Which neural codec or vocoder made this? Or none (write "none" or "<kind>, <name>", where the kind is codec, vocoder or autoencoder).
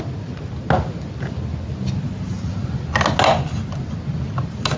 none